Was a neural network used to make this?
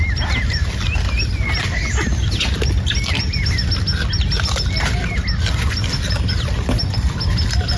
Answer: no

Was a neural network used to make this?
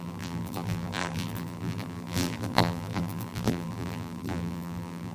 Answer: yes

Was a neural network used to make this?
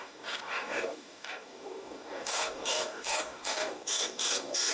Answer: yes